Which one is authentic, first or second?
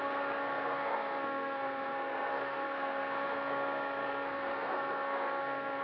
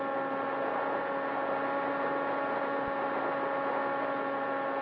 second